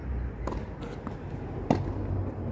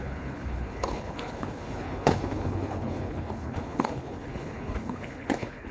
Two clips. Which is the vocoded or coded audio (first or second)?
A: second